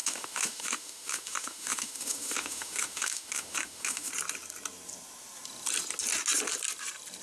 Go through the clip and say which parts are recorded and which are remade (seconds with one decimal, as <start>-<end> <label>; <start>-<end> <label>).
0.0-4.1 remade; 4.1-7.2 recorded